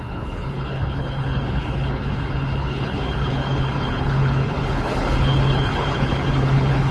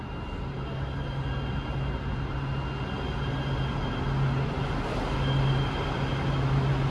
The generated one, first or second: first